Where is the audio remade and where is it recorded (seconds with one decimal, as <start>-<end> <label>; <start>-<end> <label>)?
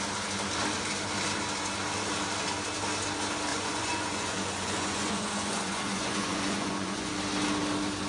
0.0-3.5 recorded; 3.5-7.1 remade; 7.1-8.1 recorded